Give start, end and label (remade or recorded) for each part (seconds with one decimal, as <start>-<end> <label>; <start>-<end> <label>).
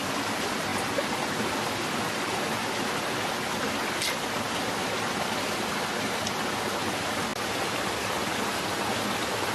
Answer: 0.0-9.5 recorded